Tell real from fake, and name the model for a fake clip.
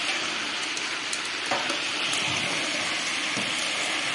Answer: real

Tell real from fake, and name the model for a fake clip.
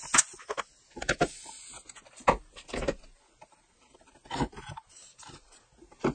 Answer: real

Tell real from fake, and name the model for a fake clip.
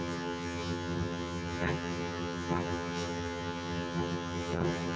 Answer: fake, vocoder, HiFi-GAN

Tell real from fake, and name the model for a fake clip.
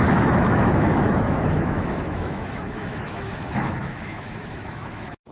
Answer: fake, autoencoder, DAC-VAE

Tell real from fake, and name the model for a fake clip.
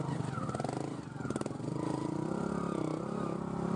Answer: real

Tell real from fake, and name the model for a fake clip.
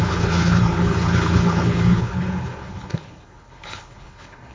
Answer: fake, codec, HILCodec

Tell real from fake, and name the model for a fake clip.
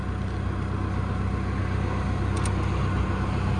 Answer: real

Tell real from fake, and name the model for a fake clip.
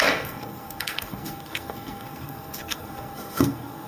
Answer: fake, codec, SNAC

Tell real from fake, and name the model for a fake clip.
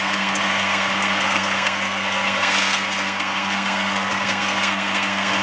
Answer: fake, codec, SNAC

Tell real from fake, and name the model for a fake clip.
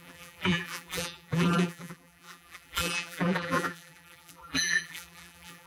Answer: fake, vocoder, BigVGAN v2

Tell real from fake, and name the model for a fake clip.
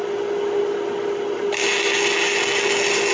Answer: real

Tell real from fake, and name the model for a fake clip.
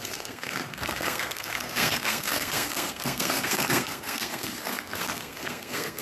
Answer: fake, codec, SNAC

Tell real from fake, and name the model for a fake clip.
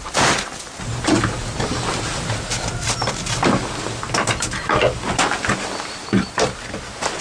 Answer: real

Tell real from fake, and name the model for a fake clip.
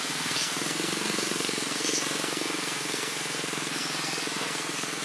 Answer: fake, codec, SNAC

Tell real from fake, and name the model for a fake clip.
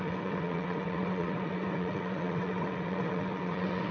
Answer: fake, vocoder, WaveNeXt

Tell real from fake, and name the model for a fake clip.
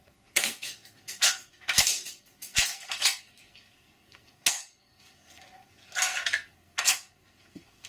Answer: fake, codec, SNAC